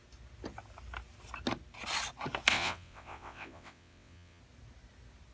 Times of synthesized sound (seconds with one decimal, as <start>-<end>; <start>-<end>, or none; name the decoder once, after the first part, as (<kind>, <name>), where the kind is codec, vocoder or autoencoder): 2.5-4.4 (vocoder, WaveNeXt)